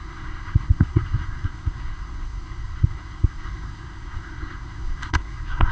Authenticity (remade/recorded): remade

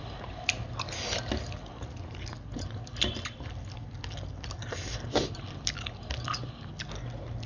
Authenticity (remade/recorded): recorded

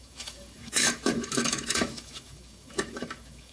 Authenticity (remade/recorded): remade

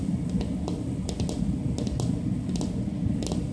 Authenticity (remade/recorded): recorded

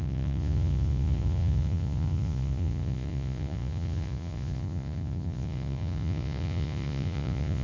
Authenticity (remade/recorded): remade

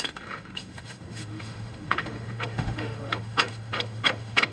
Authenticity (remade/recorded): remade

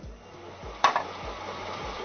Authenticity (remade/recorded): recorded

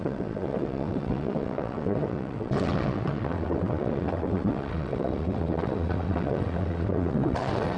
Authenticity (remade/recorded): remade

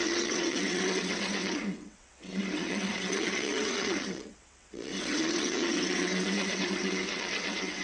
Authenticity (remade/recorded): remade